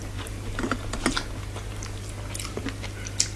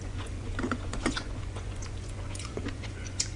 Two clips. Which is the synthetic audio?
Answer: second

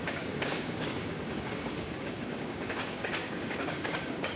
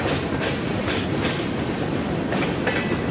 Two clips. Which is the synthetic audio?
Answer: first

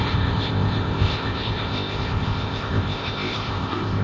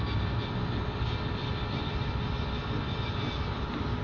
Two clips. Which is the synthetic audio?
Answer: first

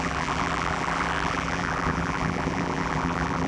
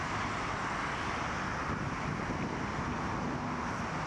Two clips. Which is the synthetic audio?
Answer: first